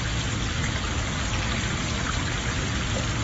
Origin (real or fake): real